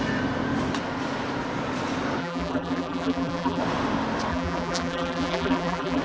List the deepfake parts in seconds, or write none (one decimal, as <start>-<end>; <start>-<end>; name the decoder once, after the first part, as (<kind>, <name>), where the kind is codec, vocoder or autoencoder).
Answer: 2.2-3.6 (vocoder, BigVGAN v2); 4.3-6.0